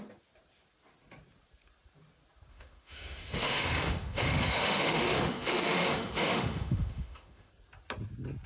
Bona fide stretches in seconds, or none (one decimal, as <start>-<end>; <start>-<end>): 0.0-2.5; 7.5-8.5